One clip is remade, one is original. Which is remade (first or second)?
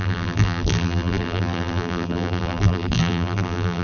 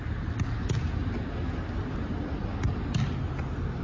first